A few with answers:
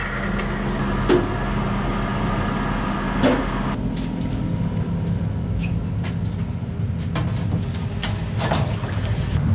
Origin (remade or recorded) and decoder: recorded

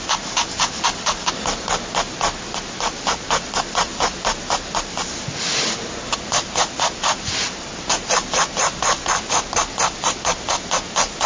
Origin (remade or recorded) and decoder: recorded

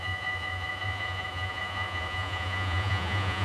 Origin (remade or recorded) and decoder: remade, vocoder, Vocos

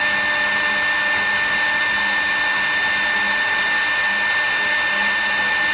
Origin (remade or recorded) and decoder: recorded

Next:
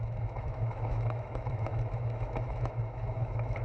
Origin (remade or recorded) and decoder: remade, autoencoder, DAC-VAE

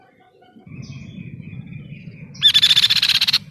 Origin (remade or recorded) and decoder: recorded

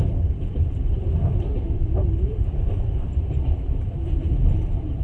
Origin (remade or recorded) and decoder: remade, vocoder, BigVGAN v2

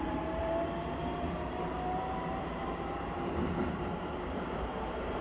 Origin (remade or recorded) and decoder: remade, vocoder, BigVGAN v2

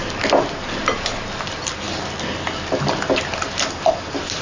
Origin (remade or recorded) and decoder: recorded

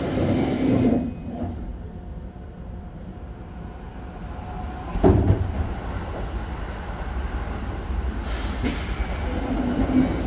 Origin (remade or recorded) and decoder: recorded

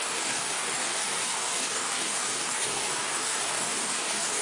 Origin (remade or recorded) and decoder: remade, codec, DAC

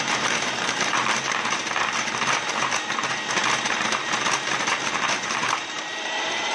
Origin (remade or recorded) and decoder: remade, vocoder, BigVGAN v2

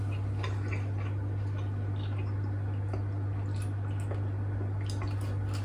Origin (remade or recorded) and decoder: recorded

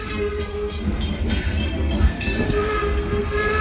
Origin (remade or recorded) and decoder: remade, codec, SNAC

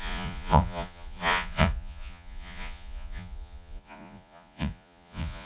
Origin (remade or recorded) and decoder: remade, vocoder, Vocos